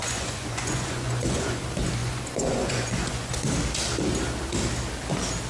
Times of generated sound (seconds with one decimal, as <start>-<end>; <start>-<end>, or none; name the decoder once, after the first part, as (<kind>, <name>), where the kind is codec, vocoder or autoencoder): 0.0-1.6 (vocoder, Vocos); 2.0-3.3